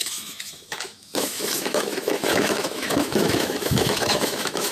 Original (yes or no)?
no